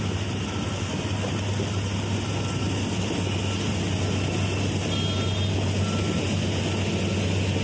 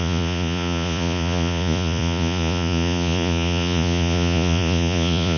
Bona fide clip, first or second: first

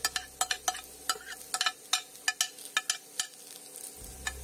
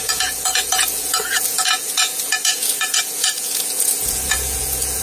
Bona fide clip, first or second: first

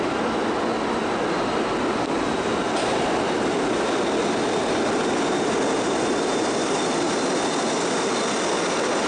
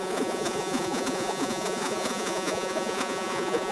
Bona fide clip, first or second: first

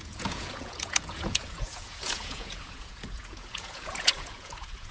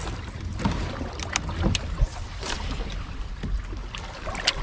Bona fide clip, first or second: second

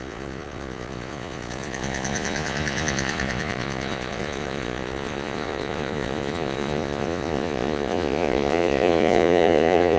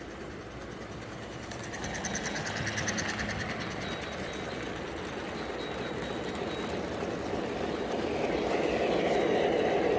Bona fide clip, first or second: second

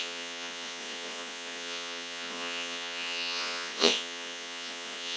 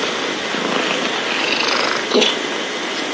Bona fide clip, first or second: second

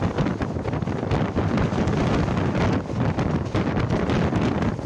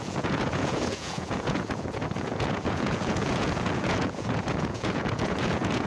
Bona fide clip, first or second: first